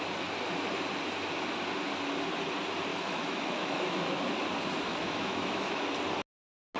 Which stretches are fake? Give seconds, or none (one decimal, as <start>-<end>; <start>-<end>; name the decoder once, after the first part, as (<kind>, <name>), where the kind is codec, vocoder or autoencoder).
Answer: 2.9-4.2 (autoencoder, DAC-VAE); 4.9-5.8